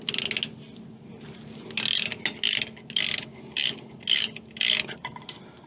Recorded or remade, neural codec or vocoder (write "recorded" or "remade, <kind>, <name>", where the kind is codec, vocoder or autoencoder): recorded